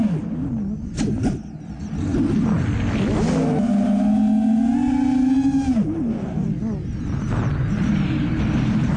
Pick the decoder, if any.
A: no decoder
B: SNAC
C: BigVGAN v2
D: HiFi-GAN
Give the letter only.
A